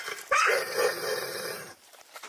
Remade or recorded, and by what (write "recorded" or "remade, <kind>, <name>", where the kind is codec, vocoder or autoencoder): remade, vocoder, BigVGAN v2